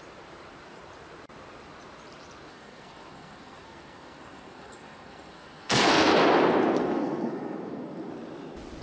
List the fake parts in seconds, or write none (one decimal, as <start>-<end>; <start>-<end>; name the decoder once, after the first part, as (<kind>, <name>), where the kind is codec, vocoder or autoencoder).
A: 2.5-6.2 (codec, SNAC); 6.8-8.1